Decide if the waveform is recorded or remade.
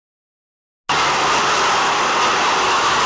recorded